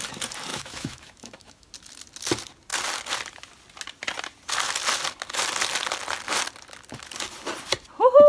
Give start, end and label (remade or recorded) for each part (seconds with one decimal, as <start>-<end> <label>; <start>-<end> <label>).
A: 0.0-0.5 recorded; 0.5-1.7 remade; 1.7-8.3 recorded